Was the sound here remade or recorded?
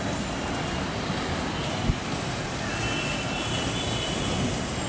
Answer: recorded